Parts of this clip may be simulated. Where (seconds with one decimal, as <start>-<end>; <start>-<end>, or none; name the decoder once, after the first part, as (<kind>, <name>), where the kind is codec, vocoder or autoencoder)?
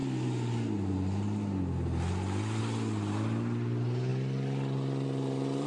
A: none